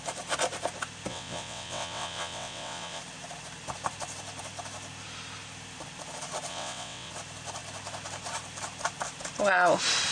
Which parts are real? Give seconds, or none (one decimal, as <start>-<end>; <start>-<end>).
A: 0.0-1.1; 3.0-6.5; 7.1-10.1